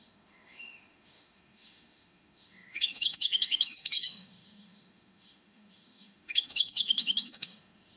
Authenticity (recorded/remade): remade